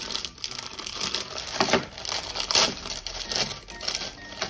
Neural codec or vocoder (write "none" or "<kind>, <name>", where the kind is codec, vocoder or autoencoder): none